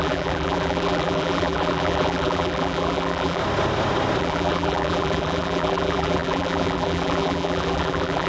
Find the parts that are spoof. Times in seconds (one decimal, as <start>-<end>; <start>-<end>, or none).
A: 0.0-3.4; 4.2-8.3